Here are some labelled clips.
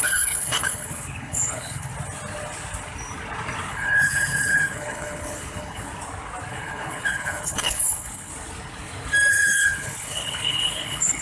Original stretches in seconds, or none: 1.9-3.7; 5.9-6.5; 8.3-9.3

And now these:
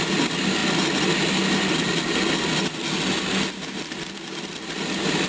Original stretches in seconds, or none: 0.0-5.3

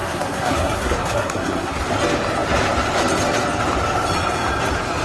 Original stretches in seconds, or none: 1.8-5.0

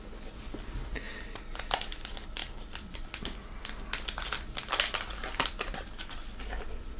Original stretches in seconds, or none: 0.0-7.0